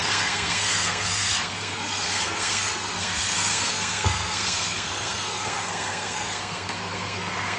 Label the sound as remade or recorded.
remade